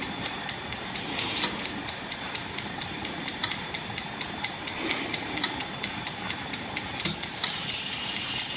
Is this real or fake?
fake